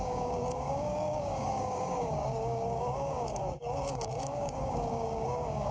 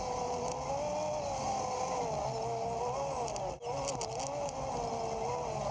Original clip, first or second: second